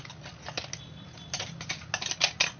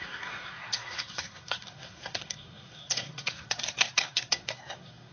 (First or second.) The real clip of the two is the first